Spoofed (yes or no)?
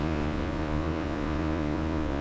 yes